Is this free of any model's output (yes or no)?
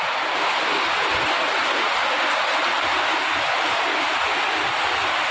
yes